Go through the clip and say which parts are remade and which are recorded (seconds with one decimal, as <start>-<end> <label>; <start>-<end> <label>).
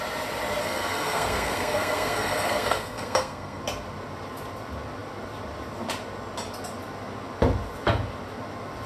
0.0-0.6 recorded; 0.6-3.6 remade; 3.6-8.9 recorded